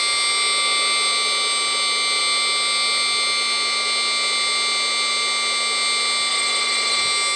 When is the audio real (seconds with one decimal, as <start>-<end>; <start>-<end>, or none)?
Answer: 0.0-6.3; 7.0-7.4